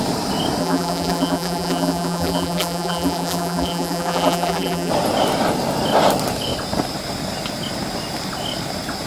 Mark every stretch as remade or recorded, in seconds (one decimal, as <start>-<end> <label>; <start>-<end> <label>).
0.0-0.6 recorded; 0.6-4.9 remade; 4.9-9.1 recorded

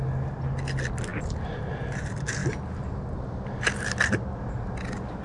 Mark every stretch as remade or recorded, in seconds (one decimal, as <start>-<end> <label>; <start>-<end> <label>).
0.0-5.2 recorded

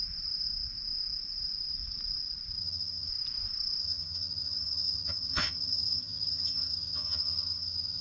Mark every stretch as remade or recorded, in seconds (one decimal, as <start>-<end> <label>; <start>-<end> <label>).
0.0-2.6 recorded; 2.6-3.1 remade; 3.1-3.8 recorded; 3.8-8.0 remade

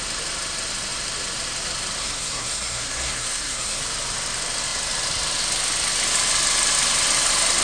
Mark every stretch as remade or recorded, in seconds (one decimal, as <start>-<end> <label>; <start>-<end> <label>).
0.0-2.0 recorded; 2.0-3.8 remade; 3.8-7.6 recorded

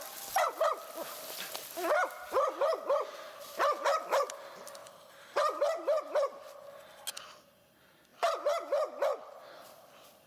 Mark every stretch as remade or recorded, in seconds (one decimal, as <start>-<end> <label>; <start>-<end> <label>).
0.0-4.8 recorded; 4.8-6.0 remade; 6.0-10.3 recorded

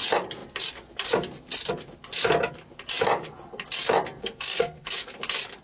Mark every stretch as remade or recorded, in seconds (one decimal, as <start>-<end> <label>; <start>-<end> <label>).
0.0-4.2 recorded; 4.2-4.9 remade; 4.9-5.6 recorded

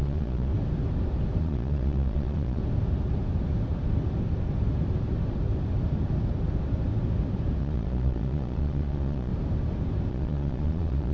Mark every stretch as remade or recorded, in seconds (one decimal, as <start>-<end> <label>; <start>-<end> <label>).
0.0-0.5 remade; 0.5-1.4 recorded; 1.4-2.6 remade; 2.6-7.6 recorded; 7.6-9.3 remade; 9.3-10.1 recorded; 10.1-11.1 remade

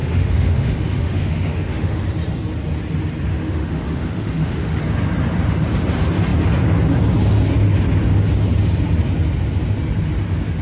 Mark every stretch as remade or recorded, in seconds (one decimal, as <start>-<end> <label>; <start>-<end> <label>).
0.0-2.0 remade; 2.0-3.3 recorded; 3.3-4.8 remade; 4.8-10.6 recorded